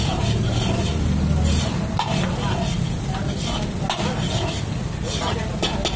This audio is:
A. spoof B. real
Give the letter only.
B